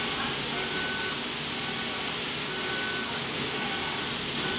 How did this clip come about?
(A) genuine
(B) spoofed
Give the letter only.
A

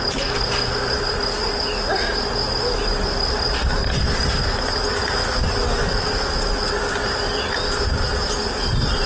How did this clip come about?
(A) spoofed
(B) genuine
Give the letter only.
B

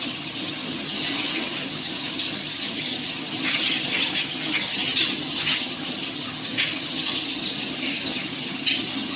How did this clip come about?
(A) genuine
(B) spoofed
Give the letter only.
B